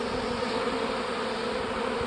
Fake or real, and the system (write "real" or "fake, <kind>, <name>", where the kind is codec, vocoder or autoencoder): real